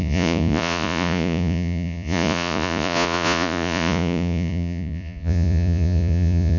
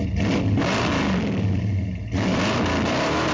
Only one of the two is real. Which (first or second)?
second